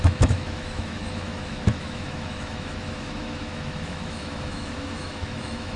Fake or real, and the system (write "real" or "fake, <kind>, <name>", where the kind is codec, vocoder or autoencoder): fake, autoencoder, DAC-VAE